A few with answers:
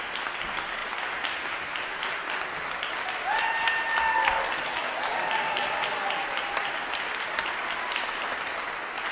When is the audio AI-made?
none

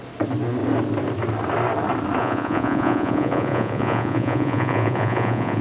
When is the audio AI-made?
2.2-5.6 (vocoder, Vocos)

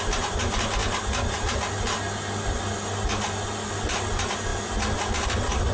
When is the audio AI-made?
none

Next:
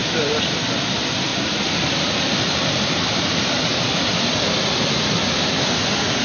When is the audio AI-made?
0.0-0.6 (vocoder, BigVGAN v2); 1.3-4.0